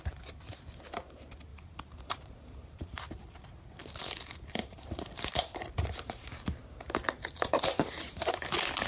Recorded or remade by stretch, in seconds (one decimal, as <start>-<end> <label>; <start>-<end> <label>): 0.0-1.5 recorded; 1.5-3.4 remade; 3.4-4.6 recorded; 4.6-8.5 remade; 8.5-8.9 recorded